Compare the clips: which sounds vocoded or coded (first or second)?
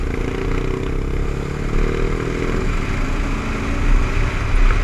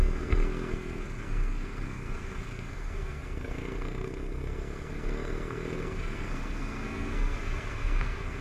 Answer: second